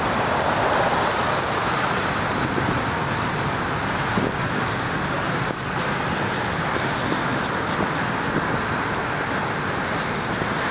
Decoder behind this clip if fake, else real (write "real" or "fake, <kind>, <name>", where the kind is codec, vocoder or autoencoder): real